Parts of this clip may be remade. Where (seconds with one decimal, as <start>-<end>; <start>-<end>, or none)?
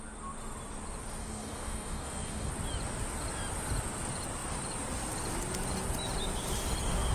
1.2-2.5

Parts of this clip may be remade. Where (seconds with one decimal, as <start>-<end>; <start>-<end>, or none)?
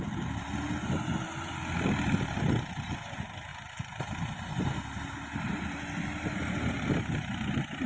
none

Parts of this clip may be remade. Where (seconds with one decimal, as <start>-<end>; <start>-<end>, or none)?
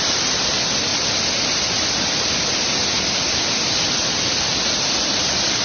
none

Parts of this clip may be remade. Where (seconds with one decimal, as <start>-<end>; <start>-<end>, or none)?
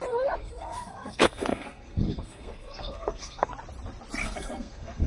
0.4-3.5; 4.2-5.1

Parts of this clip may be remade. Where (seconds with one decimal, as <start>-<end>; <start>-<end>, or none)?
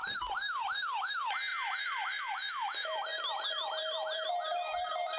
0.0-1.1; 1.5-2.2; 3.1-5.2